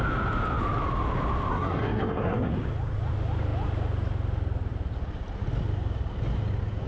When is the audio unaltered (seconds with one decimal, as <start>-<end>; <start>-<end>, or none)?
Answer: 0.0-1.5; 2.5-6.9